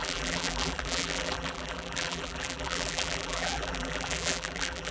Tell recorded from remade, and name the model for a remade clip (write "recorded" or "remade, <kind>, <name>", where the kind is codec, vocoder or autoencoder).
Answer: remade, vocoder, BigVGAN v2